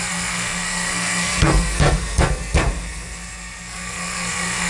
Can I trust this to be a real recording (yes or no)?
no